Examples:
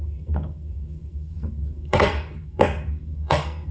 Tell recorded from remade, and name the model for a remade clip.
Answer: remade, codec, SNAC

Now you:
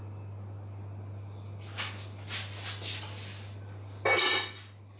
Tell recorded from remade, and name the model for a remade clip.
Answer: recorded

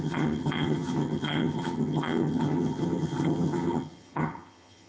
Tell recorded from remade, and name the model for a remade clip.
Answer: remade, vocoder, HiFi-GAN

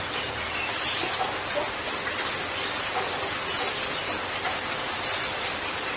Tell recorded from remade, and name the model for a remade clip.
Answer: recorded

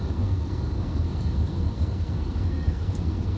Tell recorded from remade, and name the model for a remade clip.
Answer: remade, codec, SNAC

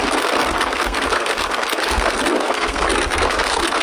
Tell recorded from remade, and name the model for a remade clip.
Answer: remade, codec, SNAC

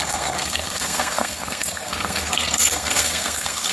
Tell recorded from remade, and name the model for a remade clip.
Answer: remade, codec, SNAC